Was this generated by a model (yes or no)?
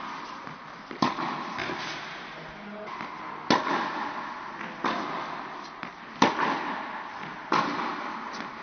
no